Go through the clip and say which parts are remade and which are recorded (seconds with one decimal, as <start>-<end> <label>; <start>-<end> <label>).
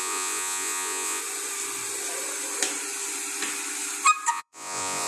0.0-1.2 remade; 1.2-4.3 recorded; 4.3-5.1 remade